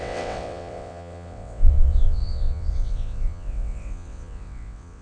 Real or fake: fake